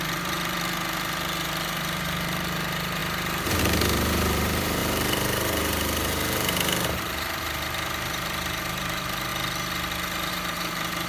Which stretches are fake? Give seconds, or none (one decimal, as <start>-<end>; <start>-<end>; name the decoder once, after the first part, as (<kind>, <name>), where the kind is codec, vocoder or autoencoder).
0.0-9.3 (vocoder, BigVGAN v2); 10.3-11.1